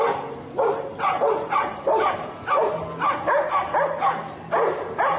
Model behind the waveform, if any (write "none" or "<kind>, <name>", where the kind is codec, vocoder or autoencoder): none